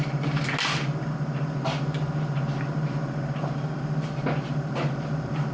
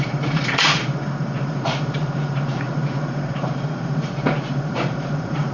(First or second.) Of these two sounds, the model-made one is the second